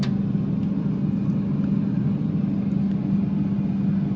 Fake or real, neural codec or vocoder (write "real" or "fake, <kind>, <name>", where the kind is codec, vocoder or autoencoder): real